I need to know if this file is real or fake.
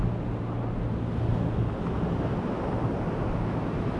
real